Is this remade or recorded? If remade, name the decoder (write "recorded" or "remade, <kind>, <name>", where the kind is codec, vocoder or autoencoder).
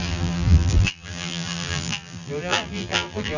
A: remade, vocoder, BigVGAN v2